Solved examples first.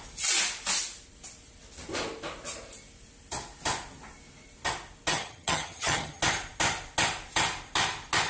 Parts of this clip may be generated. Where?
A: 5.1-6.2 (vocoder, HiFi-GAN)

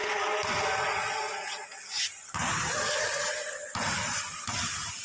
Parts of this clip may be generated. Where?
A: none